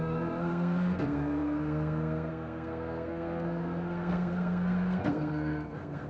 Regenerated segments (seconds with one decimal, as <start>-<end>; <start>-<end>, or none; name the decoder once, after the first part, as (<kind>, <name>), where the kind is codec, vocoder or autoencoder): 0.0-6.1 (codec, SNAC)